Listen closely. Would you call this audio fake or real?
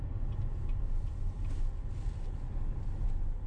real